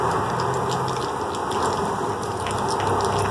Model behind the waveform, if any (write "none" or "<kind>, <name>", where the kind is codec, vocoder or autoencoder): none